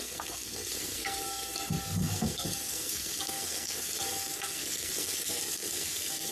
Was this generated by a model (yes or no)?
yes